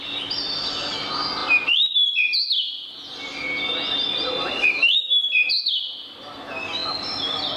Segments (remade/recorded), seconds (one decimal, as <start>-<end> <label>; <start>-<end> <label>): 0.0-7.6 recorded